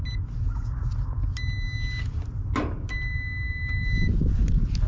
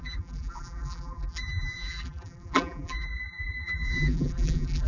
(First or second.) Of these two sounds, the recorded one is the first